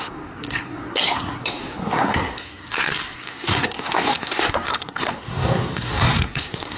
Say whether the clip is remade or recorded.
remade